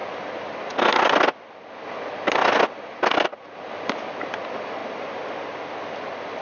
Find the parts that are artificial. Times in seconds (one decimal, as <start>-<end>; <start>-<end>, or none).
none